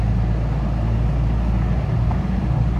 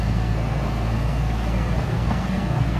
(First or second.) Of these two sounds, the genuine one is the first